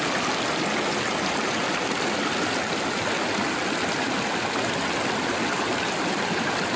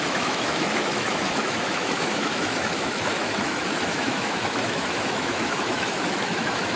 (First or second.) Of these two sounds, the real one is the first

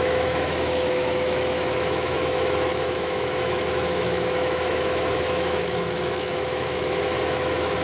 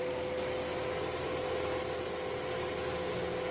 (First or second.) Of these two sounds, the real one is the second